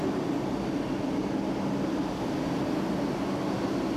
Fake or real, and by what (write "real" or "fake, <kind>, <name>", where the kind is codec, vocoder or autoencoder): real